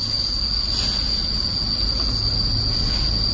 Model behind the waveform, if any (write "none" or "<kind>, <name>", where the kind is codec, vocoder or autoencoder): none